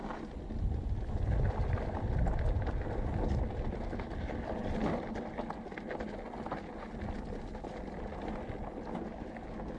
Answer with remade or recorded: recorded